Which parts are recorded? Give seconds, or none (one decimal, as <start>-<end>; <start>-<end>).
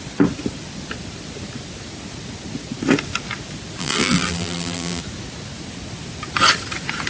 0.0-3.8; 5.0-7.1